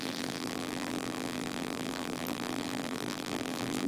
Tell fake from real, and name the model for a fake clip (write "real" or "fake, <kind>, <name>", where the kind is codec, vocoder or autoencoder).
fake, vocoder, BigVGAN v2